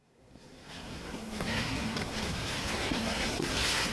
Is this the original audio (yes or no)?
no